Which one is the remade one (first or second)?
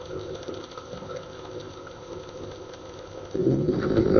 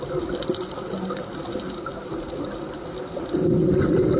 first